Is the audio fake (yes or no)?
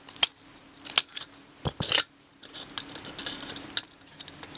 no